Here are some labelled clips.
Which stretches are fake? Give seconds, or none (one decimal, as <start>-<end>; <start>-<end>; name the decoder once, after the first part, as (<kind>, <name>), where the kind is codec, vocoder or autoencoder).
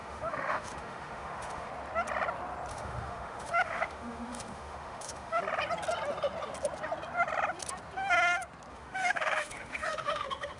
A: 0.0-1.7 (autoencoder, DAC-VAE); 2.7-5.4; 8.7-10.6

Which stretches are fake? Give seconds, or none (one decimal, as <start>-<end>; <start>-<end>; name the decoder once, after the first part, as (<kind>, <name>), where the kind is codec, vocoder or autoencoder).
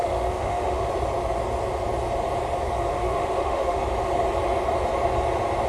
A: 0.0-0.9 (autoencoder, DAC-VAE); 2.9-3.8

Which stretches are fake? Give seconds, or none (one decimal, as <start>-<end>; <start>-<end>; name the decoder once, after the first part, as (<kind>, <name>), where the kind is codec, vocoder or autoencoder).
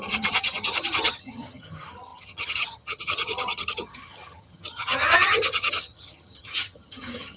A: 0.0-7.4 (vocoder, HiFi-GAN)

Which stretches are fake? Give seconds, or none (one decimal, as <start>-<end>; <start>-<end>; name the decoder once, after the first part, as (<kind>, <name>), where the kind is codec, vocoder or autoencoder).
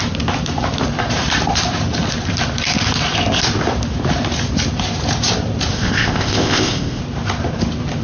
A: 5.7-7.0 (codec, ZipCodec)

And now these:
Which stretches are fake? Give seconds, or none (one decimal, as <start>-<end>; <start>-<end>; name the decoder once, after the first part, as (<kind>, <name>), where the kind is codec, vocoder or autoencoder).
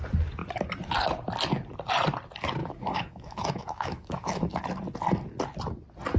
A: 2.6-4.6 (autoencoder, DAC-VAE)